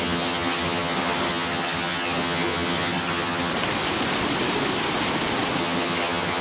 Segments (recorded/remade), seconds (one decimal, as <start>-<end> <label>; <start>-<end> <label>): 0.0-3.5 remade; 3.5-5.6 recorded; 5.6-6.4 remade